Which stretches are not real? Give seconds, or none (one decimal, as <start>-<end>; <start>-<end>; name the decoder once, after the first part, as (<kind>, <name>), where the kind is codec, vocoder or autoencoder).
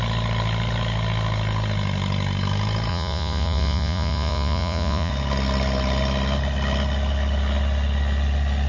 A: 2.9-5.1 (vocoder, Vocos)